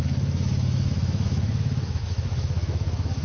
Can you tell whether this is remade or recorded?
remade